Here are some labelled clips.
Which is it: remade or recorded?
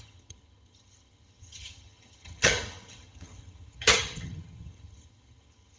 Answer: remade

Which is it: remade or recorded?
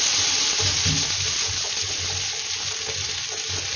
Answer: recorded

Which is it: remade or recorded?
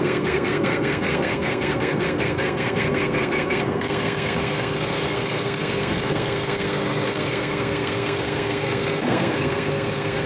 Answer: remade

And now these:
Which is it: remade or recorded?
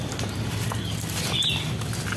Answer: recorded